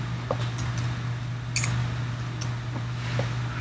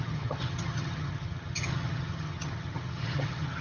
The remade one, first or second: second